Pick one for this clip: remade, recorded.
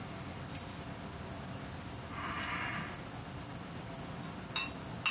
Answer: recorded